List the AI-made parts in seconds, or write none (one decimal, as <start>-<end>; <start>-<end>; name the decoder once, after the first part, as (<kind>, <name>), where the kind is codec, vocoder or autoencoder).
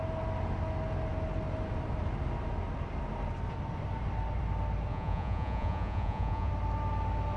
4.9-6.5 (vocoder, Vocos)